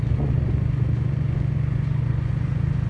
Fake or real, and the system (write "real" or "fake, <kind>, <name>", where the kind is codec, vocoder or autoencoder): fake, vocoder, Vocos